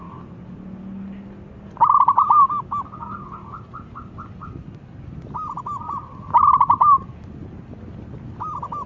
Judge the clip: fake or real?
real